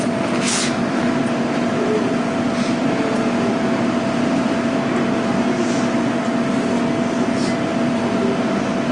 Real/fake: real